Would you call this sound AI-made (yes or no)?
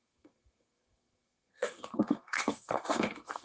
yes